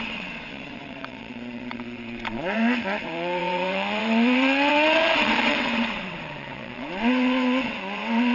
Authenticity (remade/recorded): remade